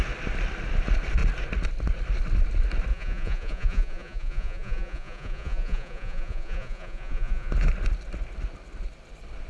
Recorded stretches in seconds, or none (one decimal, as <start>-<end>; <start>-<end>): 0.0-2.9; 7.5-9.5